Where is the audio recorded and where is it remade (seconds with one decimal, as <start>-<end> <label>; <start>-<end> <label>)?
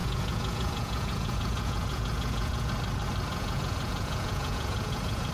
0.0-2.7 remade; 2.7-3.3 recorded; 3.3-5.3 remade